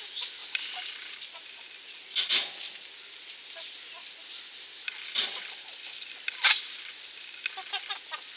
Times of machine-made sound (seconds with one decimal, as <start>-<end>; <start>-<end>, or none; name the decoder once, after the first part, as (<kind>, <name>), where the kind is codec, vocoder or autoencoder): none